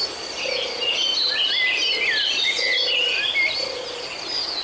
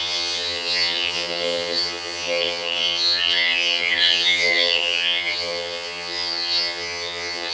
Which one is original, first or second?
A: first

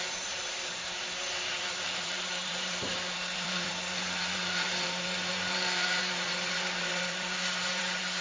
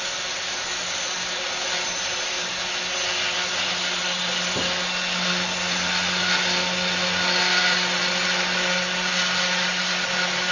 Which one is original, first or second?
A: second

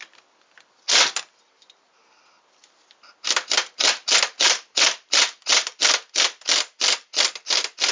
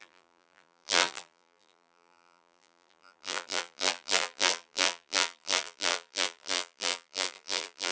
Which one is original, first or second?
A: first